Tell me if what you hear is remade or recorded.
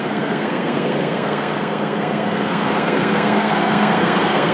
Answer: remade